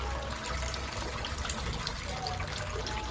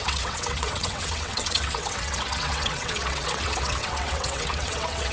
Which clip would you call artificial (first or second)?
second